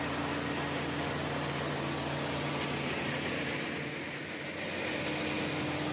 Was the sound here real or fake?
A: real